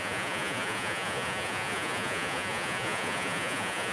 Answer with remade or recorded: remade